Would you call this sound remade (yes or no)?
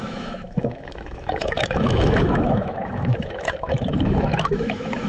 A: yes